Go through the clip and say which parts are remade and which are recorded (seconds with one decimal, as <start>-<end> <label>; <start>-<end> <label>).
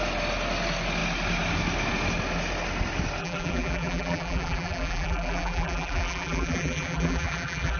0.0-3.2 recorded; 3.2-7.8 remade